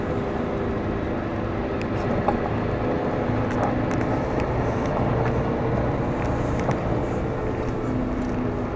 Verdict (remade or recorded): recorded